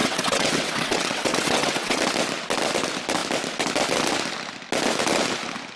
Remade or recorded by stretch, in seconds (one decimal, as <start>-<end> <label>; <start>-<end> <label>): 0.0-2.0 remade; 2.0-5.8 recorded